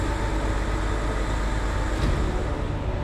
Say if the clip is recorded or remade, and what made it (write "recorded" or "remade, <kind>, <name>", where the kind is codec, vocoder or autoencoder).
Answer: recorded